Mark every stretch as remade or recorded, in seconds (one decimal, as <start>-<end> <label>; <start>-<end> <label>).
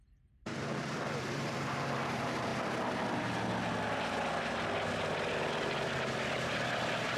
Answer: 0.0-2.5 remade; 2.5-6.8 recorded; 6.8-7.2 remade